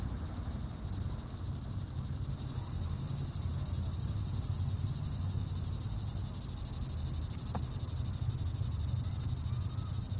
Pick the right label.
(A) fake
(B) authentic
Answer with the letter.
B